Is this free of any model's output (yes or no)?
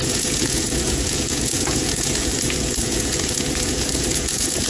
no